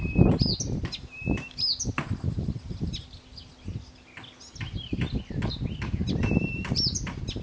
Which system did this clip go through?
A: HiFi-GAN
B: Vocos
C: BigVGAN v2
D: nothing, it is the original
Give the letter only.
D